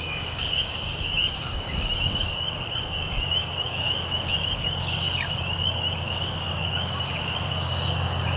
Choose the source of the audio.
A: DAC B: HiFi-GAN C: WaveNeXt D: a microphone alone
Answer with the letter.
A